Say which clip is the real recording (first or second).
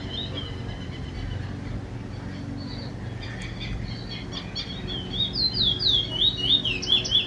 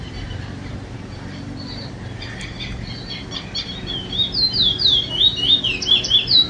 first